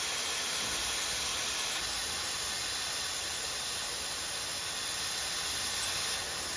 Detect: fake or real real